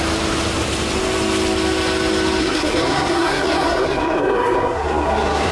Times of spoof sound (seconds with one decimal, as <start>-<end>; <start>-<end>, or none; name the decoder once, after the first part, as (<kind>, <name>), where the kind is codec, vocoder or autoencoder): 2.4-5.5 (codec, SNAC)